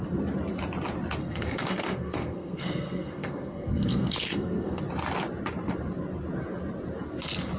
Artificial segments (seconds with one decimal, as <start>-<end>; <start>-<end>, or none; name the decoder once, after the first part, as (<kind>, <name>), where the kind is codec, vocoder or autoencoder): 1.2-4.8 (codec, SNAC)